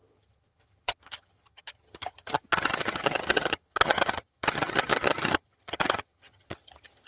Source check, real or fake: fake